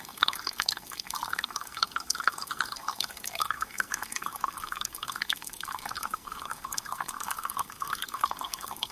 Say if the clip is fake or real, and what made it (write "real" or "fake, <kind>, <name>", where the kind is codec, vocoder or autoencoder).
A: fake, codec, SNAC